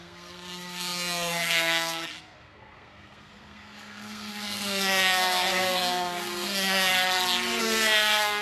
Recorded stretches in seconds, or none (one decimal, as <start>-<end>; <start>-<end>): 6.9-7.6